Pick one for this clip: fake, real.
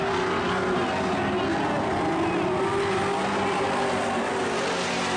real